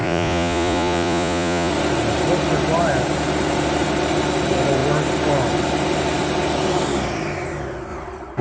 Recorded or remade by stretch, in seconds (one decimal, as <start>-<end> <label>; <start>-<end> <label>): 0.0-1.7 remade; 1.7-8.4 recorded